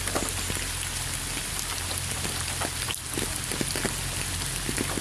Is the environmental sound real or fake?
real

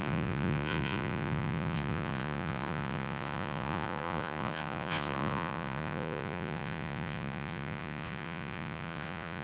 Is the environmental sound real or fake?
fake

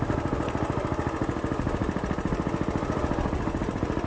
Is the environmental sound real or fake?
real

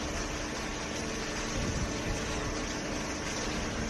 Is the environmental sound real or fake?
real